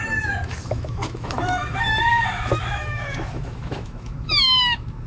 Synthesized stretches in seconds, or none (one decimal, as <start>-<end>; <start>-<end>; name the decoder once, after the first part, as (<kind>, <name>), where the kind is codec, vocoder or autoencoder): 0.0-5.1 (autoencoder, DAC-VAE)

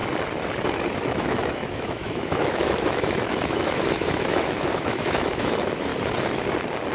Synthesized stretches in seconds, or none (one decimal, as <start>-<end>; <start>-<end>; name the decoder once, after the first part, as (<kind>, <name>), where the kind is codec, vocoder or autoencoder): 0.9-5.9 (autoencoder, DAC-VAE)